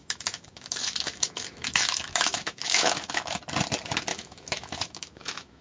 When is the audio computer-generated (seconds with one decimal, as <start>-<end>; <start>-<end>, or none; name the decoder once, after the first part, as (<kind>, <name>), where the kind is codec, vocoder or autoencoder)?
0.0-3.4 (autoencoder, DAC-VAE); 4.1-5.6